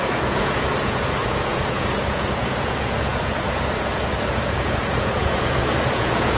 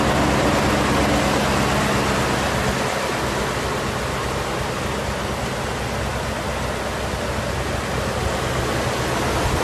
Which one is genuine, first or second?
second